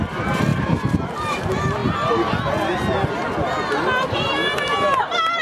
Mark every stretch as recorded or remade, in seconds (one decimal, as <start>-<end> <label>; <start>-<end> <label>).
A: 0.0-5.4 recorded